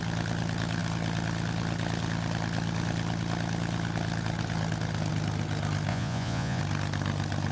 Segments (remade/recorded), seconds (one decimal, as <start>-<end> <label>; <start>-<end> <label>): 0.0-5.9 recorded; 5.9-6.6 remade; 6.6-7.5 recorded